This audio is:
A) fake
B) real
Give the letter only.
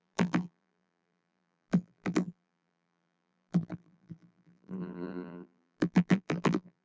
A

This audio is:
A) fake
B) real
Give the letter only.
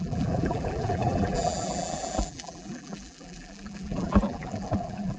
A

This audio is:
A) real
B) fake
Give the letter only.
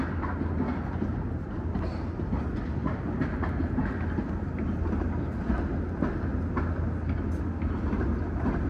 A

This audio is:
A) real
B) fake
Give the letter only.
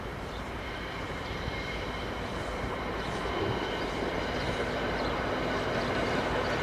B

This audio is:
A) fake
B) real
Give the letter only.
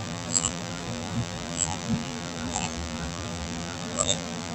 A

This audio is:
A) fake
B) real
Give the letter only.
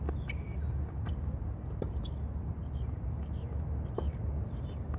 B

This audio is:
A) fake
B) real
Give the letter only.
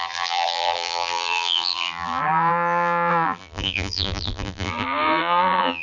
A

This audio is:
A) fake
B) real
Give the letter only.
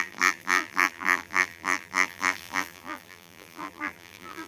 A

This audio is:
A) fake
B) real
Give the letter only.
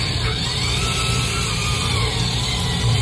A